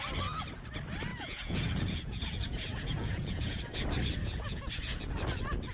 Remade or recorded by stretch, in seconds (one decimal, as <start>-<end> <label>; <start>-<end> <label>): 0.0-1.1 recorded; 1.1-3.6 remade; 3.6-4.2 recorded; 4.2-5.0 remade; 5.0-5.7 recorded